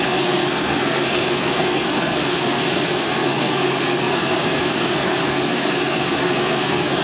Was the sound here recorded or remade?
remade